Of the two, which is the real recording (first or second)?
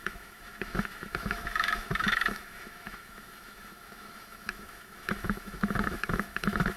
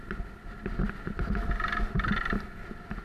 second